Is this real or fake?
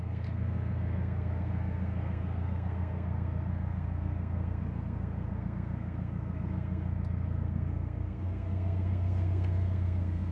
fake